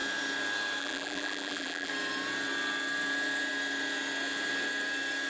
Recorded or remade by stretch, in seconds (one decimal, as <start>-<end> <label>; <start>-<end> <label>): 0.0-0.8 recorded; 0.8-1.9 remade; 1.9-5.3 recorded